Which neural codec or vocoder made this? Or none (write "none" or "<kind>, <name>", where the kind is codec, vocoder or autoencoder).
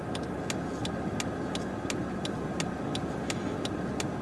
none